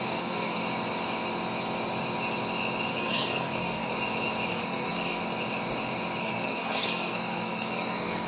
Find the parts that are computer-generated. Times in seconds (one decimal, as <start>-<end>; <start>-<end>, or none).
0.0-0.6; 2.9-3.9; 4.5-5.2; 6.2-8.3